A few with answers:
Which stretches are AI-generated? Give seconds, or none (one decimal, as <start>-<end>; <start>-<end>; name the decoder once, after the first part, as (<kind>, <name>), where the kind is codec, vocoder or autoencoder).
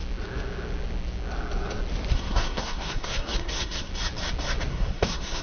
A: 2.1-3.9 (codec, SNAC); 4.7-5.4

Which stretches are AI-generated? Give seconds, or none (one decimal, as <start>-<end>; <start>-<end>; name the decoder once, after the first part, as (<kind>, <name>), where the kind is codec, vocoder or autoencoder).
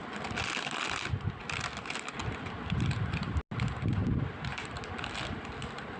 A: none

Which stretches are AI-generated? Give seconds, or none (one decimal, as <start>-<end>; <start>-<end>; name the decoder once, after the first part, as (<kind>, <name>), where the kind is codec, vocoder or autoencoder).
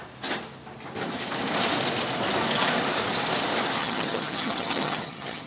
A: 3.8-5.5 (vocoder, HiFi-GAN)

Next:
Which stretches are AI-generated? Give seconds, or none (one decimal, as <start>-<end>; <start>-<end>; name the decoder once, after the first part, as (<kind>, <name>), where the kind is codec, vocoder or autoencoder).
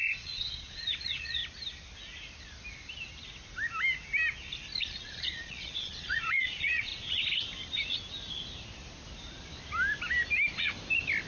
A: 0.0-1.4 (vocoder, Vocos); 4.8-6.9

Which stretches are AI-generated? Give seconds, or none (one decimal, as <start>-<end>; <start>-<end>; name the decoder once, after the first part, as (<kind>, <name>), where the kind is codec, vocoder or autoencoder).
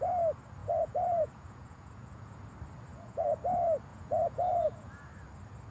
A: 0.6-2.5 (vocoder, Vocos); 2.9-3.4; 3.9-4.9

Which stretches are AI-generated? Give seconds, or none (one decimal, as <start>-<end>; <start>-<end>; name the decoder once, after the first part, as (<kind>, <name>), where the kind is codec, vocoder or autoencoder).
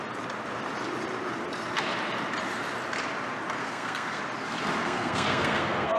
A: 3.6-4.2 (codec, SNAC); 4.8-6.0